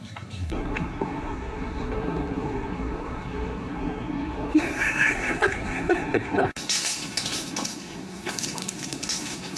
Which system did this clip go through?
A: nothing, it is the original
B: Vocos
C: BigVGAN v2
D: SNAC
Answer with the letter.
D